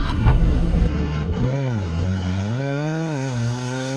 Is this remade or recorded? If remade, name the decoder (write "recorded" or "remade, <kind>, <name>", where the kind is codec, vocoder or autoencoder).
remade, codec, SNAC